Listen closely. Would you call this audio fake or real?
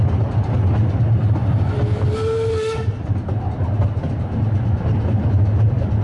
real